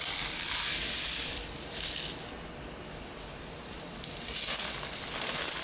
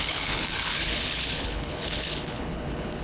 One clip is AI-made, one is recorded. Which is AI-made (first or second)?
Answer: second